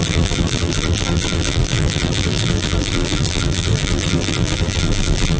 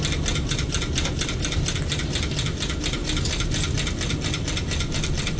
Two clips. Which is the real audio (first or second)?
second